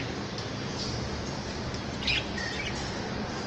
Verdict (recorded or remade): recorded